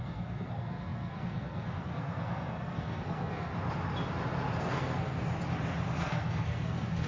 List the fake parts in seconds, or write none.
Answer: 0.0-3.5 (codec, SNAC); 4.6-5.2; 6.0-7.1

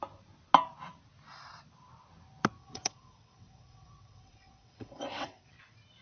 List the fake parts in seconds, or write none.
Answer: 2.6-5.5 (vocoder, WaveNeXt)

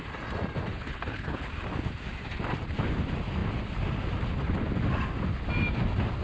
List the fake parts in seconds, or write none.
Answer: 0.7-1.5 (codec, HILCodec)

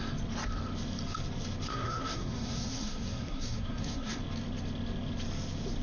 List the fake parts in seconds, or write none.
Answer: 1.7-4.2 (codec, SNAC)

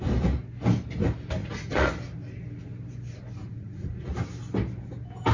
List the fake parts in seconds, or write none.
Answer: 1.4-1.9 (vocoder, Vocos); 3.4-4.1

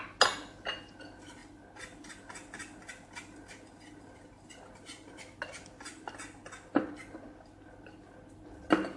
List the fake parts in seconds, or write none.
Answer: none

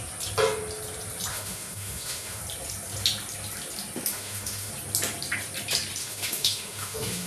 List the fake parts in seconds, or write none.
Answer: 1.3-2.4 (autoencoder, DAC-VAE); 4.1-4.7; 6.0-7.3

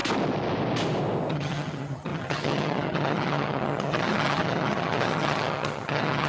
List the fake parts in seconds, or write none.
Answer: 1.3-6.3 (vocoder, HiFi-GAN)